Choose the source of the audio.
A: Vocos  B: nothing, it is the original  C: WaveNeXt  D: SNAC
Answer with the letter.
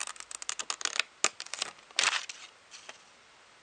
B